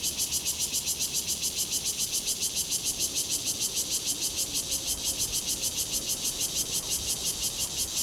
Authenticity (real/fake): fake